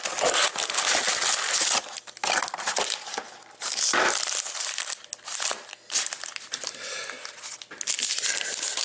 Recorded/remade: recorded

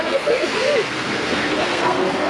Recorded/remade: remade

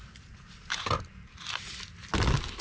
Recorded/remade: recorded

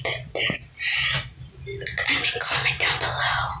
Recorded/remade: recorded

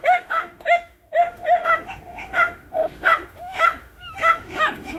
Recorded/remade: remade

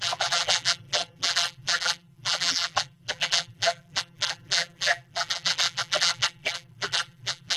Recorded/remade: remade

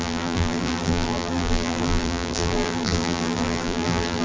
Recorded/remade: remade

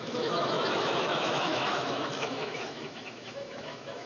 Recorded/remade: remade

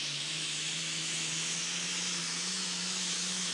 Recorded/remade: remade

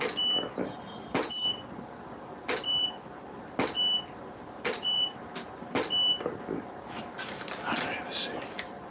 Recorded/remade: recorded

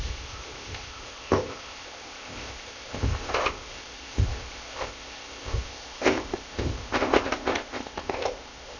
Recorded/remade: remade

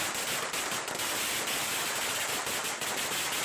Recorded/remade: recorded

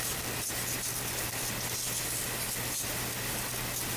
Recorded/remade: recorded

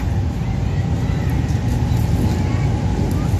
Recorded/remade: recorded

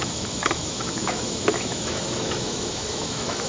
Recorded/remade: remade